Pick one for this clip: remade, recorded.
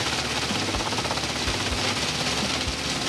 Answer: recorded